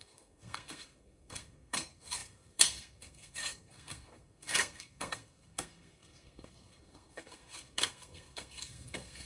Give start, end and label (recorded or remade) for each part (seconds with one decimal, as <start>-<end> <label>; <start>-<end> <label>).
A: 0.0-9.3 remade